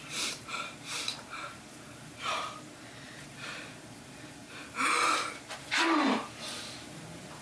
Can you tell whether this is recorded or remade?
remade